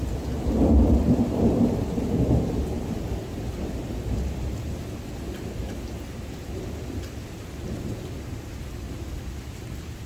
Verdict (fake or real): real